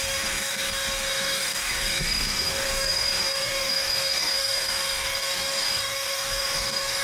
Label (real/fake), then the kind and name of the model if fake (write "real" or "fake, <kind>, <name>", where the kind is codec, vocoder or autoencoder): fake, codec, DAC